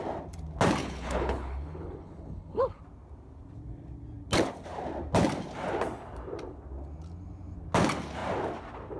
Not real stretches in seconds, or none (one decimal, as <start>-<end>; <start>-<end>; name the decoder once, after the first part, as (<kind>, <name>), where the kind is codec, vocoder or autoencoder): 0.8-2.8 (codec, HILCodec)